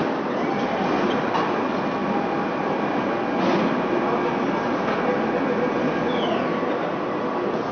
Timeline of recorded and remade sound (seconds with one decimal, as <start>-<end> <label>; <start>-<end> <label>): 0.0-7.7 recorded